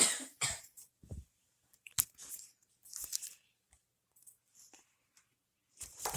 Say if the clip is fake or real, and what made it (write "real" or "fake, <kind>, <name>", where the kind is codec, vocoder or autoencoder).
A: fake, vocoder, BigVGAN v2